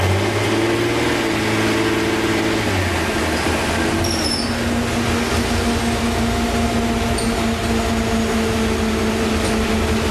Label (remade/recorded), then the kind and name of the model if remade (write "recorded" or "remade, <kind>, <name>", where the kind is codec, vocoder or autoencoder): recorded